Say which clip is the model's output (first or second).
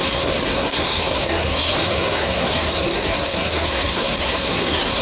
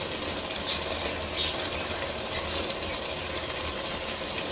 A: first